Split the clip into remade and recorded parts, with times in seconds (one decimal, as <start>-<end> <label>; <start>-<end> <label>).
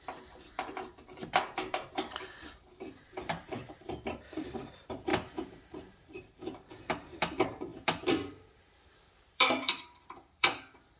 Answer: 0.0-11.0 remade